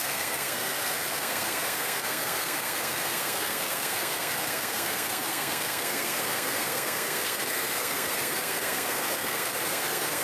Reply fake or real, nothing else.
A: fake